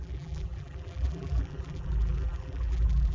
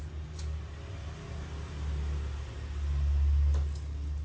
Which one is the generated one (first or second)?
first